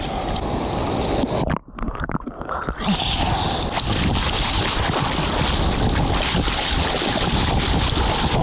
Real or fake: real